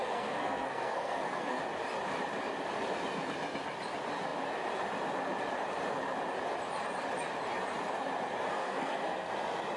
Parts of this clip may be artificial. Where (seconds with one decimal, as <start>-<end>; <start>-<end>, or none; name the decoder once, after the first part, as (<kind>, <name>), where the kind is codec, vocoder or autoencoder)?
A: 0.0-1.6 (codec, SNAC); 8.5-9.3